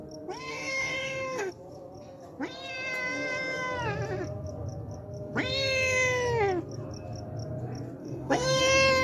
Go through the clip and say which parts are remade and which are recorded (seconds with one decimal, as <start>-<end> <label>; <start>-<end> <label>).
0.0-0.5 recorded; 0.5-1.5 remade; 1.5-8.0 recorded; 8.0-8.6 remade; 8.6-9.0 recorded